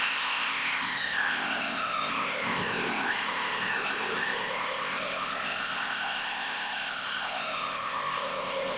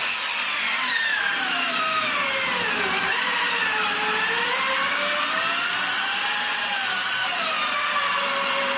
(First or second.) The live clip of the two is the second